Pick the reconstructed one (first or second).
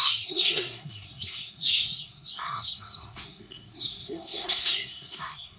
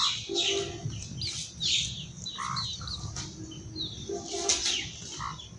first